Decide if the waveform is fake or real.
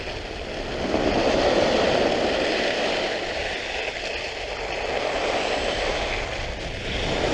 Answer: real